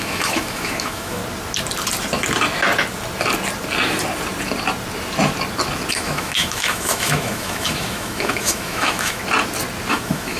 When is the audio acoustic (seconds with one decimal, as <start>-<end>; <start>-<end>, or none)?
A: 1.2-5.9; 9.2-9.9